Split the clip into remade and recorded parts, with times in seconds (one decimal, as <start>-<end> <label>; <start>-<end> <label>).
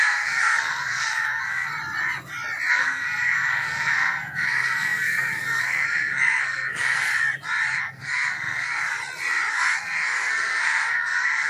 0.0-1.7 remade; 1.7-2.7 recorded; 2.7-7.1 remade; 7.1-7.7 recorded; 7.7-8.8 remade; 8.8-9.5 recorded; 9.5-11.5 remade